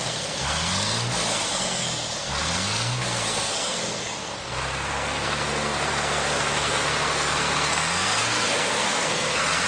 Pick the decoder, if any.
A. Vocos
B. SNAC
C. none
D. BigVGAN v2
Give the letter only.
B